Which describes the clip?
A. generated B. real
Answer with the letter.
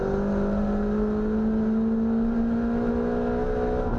B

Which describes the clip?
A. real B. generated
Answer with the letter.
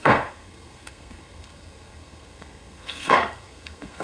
B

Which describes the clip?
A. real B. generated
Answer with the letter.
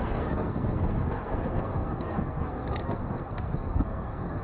B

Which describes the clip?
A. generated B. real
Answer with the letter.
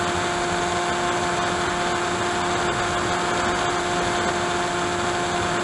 B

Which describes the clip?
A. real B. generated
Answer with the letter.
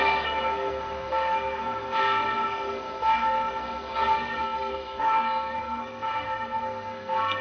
B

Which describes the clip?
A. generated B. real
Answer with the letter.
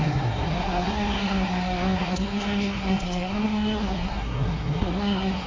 A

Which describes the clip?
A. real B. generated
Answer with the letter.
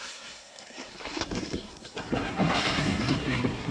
B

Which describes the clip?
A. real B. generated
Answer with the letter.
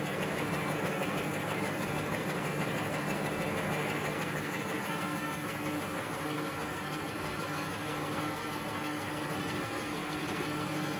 B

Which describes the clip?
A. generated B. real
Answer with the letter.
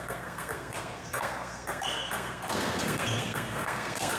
A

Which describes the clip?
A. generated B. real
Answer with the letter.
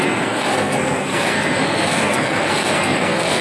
A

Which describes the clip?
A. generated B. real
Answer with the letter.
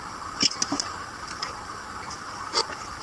B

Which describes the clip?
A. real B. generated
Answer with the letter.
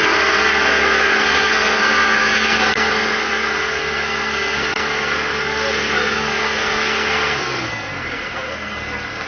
B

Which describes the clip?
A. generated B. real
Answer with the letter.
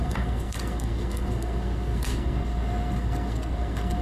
A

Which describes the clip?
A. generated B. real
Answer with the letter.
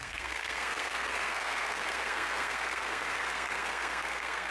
A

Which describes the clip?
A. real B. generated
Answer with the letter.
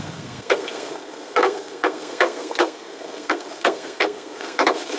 B